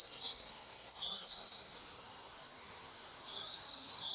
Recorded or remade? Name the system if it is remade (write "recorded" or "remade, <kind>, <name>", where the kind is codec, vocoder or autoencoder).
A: remade, codec, SNAC